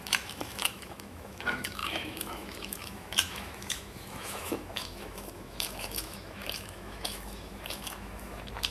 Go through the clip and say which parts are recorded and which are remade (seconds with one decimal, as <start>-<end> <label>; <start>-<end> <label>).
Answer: 0.0-8.7 remade